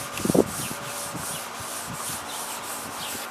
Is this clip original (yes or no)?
yes